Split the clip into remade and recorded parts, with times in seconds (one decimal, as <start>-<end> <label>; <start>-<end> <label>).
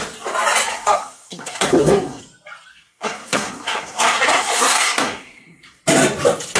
0.0-0.7 recorded; 0.7-2.2 remade; 2.2-2.7 recorded; 2.7-5.8 remade; 5.8-6.6 recorded